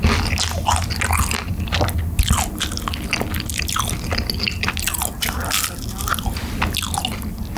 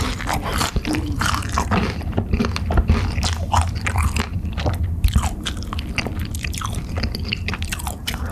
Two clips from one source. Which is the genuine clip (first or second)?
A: first